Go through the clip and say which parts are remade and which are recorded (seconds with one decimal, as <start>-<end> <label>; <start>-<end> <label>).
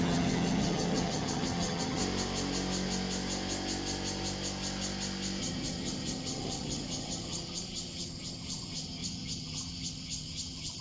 0.0-2.0 remade; 2.0-5.4 recorded; 5.4-10.8 remade